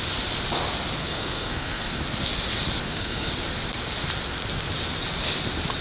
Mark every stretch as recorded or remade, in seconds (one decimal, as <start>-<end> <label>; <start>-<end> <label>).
0.0-1.0 recorded; 1.0-2.0 remade; 2.0-2.8 recorded; 2.8-3.3 remade; 3.3-5.8 recorded